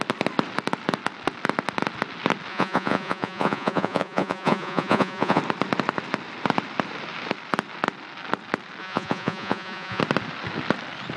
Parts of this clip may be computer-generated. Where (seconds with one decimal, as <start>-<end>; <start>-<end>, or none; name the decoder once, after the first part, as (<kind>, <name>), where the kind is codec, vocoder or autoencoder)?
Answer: 2.5-5.4 (vocoder, Vocos); 8.8-10.0